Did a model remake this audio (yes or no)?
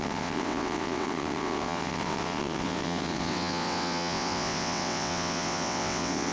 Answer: yes